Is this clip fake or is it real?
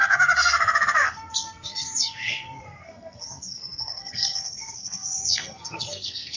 fake